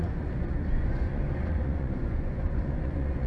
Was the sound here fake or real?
fake